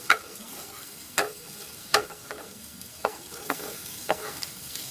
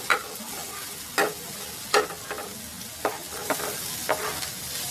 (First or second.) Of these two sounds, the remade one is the first